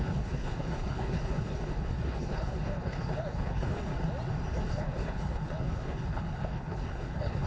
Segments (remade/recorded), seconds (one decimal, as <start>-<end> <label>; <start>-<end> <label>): 0.0-3.9 remade; 3.9-4.7 recorded; 4.7-7.5 remade